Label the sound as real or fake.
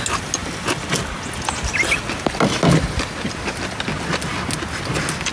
real